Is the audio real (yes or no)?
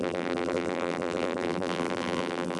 no